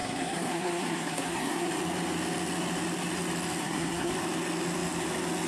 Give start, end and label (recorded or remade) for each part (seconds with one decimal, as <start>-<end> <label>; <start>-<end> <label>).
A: 0.0-1.7 remade; 1.7-3.6 recorded; 3.6-4.1 remade; 4.1-5.5 recorded